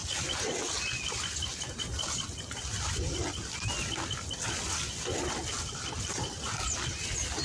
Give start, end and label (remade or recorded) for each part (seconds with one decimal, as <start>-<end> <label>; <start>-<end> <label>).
0.0-7.4 recorded

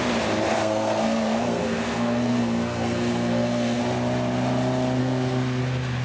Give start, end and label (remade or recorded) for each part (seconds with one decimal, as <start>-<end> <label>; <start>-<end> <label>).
0.0-0.5 recorded; 0.5-3.8 remade; 3.8-5.0 recorded; 5.0-5.6 remade; 5.6-6.0 recorded

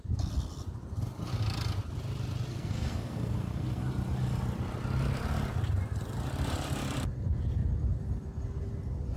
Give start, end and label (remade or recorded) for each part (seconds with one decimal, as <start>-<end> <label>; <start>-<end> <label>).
0.0-2.5 recorded; 2.5-3.9 remade; 3.9-9.2 recorded

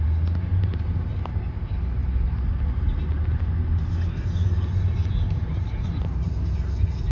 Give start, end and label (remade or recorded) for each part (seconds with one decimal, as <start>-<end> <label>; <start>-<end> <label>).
0.0-7.1 recorded

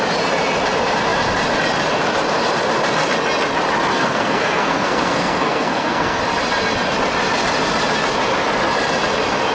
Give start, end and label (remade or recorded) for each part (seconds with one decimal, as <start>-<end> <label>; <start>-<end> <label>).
0.0-3.9 recorded; 3.9-6.2 remade; 6.2-9.5 recorded

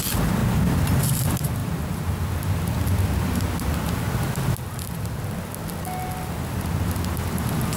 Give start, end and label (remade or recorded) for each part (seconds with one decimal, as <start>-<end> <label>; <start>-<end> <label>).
0.0-7.8 recorded

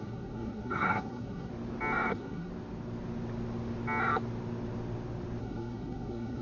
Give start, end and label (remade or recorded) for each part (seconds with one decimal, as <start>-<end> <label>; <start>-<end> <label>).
0.0-1.5 remade; 1.5-2.1 recorded; 2.1-2.5 remade; 2.5-5.4 recorded; 5.4-6.4 remade

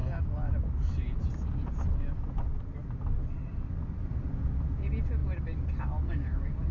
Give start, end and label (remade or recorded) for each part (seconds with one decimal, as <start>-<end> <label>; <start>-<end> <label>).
0.0-6.7 recorded